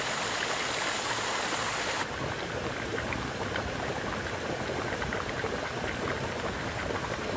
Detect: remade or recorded recorded